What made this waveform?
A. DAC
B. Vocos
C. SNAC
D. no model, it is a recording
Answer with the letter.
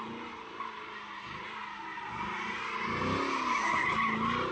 D